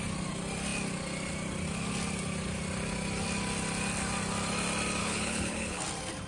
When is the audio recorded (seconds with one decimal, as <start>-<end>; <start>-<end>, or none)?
0.0-5.0; 5.8-6.3